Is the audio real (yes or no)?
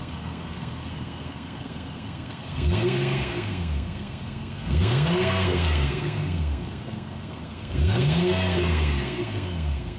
no